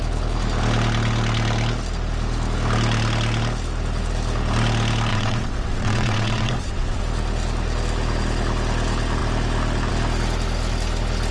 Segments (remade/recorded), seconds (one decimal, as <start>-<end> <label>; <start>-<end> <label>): 0.0-5.1 recorded; 5.1-7.0 remade; 7.0-11.3 recorded